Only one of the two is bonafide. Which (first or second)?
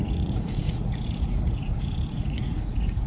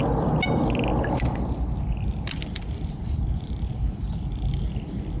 second